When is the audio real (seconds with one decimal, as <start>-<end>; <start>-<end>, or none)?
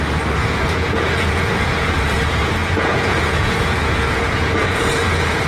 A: 0.0-0.4; 2.0-2.6